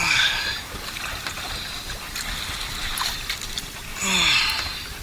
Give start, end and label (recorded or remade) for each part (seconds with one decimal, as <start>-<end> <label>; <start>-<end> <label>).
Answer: 0.0-2.8 recorded; 2.8-3.5 remade; 3.5-3.9 recorded; 3.9-5.0 remade

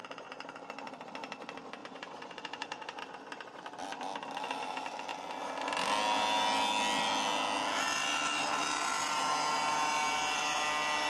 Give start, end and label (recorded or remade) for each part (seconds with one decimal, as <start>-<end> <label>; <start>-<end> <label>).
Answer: 0.0-1.8 recorded; 1.8-3.0 remade; 3.0-11.1 recorded

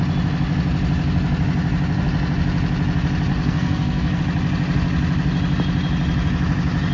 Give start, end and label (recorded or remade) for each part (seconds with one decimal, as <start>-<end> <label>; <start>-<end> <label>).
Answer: 0.0-3.3 recorded; 3.3-4.2 remade; 4.2-6.9 recorded

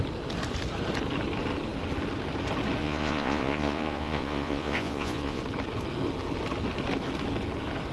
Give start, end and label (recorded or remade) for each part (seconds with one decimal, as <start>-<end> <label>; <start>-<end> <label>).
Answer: 0.0-2.8 recorded; 2.8-5.4 remade; 5.4-7.9 recorded

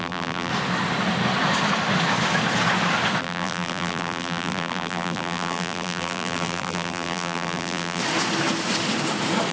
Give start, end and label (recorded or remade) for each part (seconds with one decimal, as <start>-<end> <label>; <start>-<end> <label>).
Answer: 0.0-0.5 remade; 0.5-3.2 recorded; 3.2-8.0 remade; 8.0-9.5 recorded

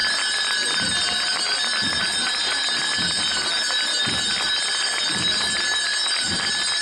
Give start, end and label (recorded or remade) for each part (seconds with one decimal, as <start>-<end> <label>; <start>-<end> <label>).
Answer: 0.0-6.8 recorded